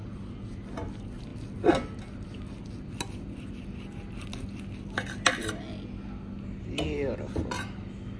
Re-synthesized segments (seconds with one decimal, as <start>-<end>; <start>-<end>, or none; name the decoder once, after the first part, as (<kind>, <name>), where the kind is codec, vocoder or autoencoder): none